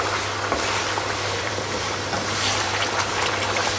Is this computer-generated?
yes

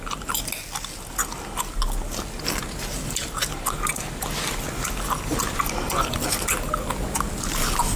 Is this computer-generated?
no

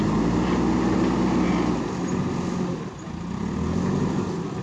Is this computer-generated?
no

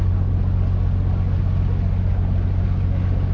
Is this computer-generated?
no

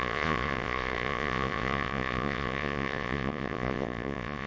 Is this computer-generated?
yes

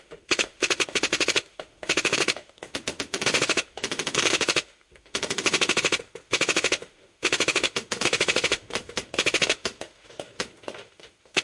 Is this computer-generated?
yes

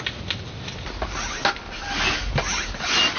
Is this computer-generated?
no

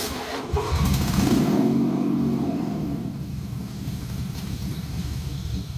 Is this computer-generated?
yes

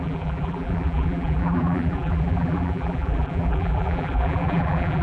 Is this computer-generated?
yes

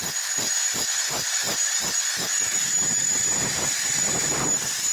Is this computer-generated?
yes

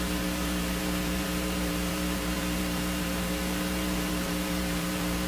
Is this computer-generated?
yes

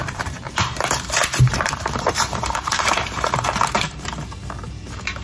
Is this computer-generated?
yes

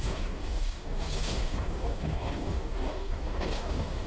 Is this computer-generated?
yes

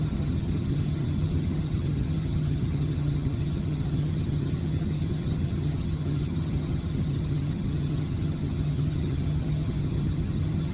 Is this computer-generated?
yes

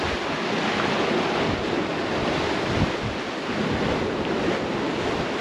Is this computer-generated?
no